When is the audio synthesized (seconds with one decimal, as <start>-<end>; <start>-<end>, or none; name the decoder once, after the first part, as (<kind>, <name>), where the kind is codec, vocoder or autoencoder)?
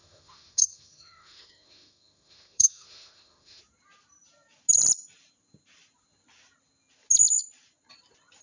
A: 0.0-3.6 (autoencoder, DAC-VAE)